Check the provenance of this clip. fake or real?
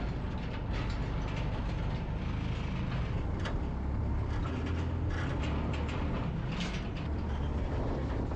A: real